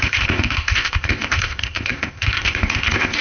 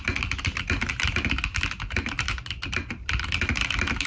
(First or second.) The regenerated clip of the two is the first